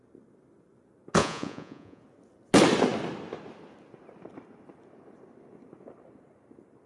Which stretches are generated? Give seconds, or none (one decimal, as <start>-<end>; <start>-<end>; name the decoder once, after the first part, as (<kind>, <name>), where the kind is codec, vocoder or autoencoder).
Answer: 1.2-2.0 (vocoder, Vocos)

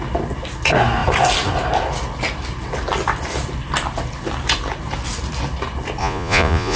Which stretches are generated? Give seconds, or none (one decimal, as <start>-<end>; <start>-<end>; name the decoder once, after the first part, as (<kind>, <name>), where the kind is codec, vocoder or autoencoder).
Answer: 6.0-6.8 (vocoder, Vocos)